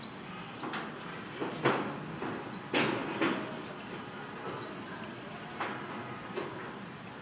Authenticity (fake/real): real